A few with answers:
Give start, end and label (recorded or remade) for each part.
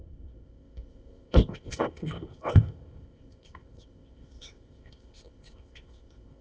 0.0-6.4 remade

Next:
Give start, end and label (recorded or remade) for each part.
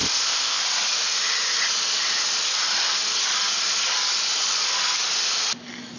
0.0-0.6 remade; 0.6-6.0 recorded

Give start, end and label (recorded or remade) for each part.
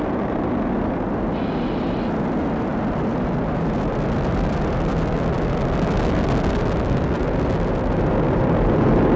0.0-9.2 recorded